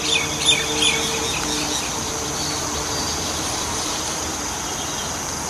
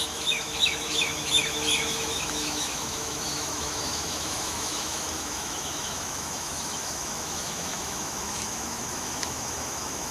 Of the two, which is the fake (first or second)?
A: second